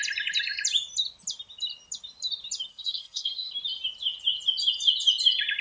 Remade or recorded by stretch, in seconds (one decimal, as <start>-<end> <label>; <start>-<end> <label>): 0.0-2.7 recorded; 2.7-3.5 remade; 3.5-5.6 recorded

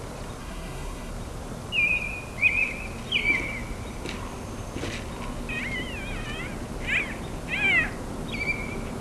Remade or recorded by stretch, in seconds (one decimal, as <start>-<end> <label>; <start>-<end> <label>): 0.0-0.4 recorded; 0.4-1.1 remade; 1.1-9.0 recorded

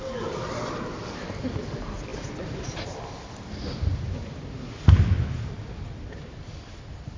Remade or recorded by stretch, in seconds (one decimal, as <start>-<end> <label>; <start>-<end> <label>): 0.0-7.2 recorded

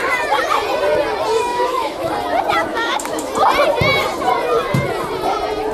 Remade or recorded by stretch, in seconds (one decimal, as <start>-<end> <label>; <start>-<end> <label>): 0.0-1.5 recorded; 1.5-2.1 remade; 2.1-2.7 recorded; 2.7-3.3 remade; 3.3-5.7 recorded

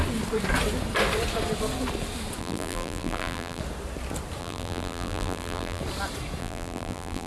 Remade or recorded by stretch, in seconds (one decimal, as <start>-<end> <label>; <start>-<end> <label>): 0.0-2.4 recorded; 2.4-3.6 remade; 3.6-4.4 recorded; 4.4-5.8 remade; 5.8-6.4 recorded; 6.4-7.3 remade

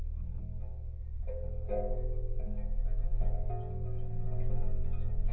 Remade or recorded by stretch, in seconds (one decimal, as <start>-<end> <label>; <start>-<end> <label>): 0.0-0.7 recorded; 0.7-1.5 remade; 1.5-5.3 recorded